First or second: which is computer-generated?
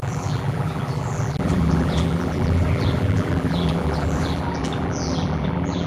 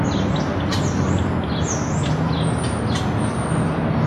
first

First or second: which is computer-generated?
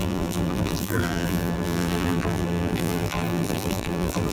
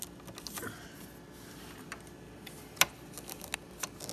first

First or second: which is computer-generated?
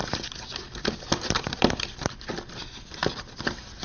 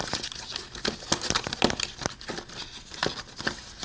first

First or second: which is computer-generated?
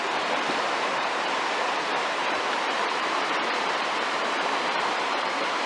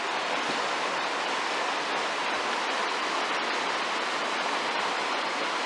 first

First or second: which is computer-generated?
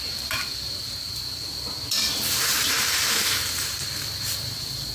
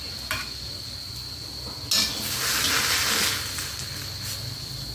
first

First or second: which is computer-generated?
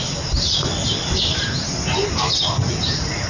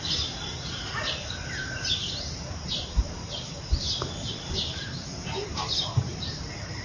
second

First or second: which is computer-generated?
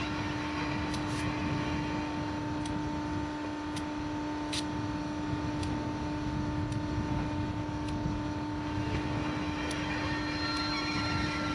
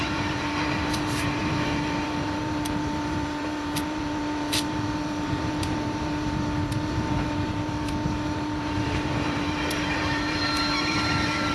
second